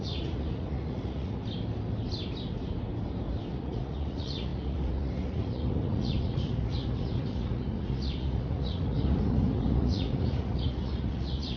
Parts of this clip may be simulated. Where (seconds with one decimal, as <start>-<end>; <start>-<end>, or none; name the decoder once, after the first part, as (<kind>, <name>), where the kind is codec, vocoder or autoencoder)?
0.0-1.4 (vocoder, Vocos); 3.5-11.6